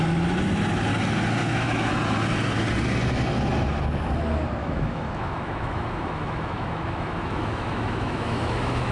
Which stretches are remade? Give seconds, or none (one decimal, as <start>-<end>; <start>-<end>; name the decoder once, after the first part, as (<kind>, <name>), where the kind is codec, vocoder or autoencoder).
1.4-1.9 (autoencoder, DAC-VAE); 4.6-8.9